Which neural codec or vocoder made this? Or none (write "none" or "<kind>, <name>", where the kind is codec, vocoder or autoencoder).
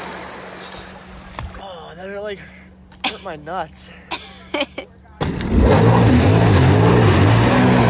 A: none